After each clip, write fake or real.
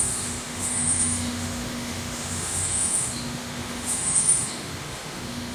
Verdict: fake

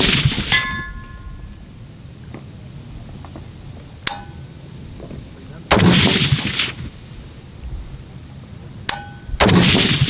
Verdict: real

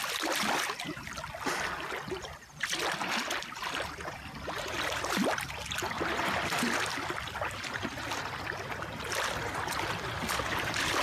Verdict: real